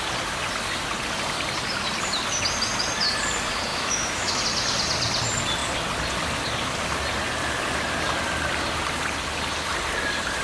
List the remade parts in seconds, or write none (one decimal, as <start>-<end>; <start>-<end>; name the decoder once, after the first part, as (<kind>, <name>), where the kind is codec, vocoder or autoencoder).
3.7-4.4 (autoencoder, DAC-VAE)